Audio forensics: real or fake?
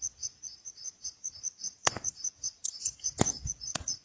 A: fake